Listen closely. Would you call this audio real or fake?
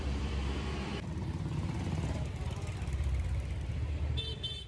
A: fake